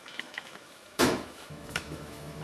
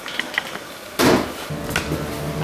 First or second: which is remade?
first